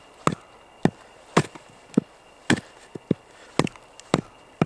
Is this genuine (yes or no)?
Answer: yes